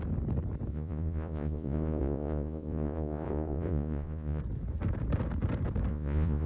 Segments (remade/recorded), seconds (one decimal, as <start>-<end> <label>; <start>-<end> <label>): 0.0-0.7 recorded; 0.7-4.4 remade; 4.4-5.9 recorded; 5.9-6.5 remade